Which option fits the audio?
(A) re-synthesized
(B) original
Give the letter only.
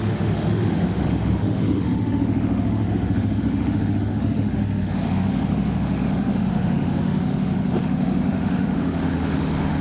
A